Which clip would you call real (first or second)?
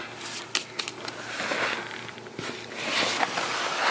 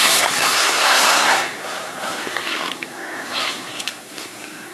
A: first